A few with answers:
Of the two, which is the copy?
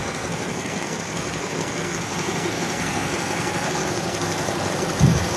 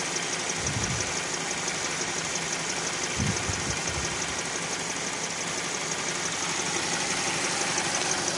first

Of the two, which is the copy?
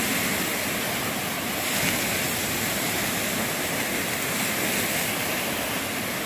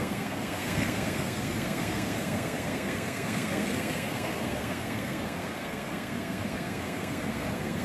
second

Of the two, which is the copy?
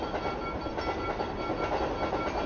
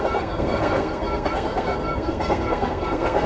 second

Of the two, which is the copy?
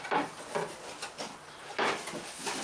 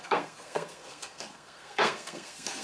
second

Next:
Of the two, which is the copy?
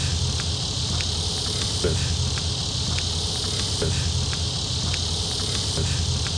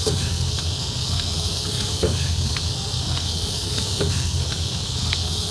second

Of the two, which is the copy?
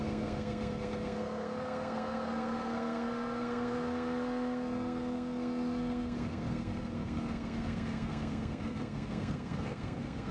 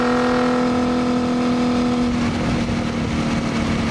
first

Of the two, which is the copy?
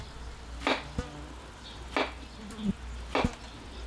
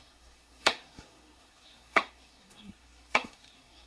second